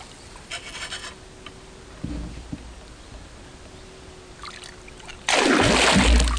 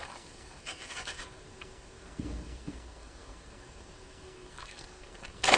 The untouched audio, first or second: first